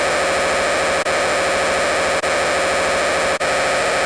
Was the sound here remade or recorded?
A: recorded